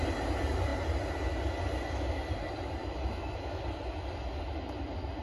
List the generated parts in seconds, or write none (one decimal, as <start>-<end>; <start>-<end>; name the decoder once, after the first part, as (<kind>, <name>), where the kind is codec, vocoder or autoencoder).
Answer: 2.8-3.6 (autoencoder, DAC-VAE)